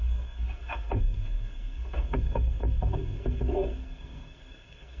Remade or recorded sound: remade